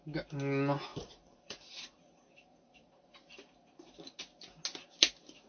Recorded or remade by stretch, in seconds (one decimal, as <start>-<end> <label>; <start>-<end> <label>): 0.0-0.9 recorded; 0.9-4.2 remade; 4.2-5.5 recorded